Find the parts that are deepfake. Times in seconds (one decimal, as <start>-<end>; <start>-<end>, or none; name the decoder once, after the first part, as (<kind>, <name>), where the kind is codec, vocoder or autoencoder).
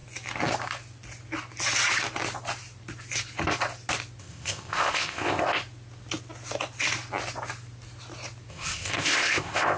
4.2-5.6 (codec, ZipCodec); 8.5-9.8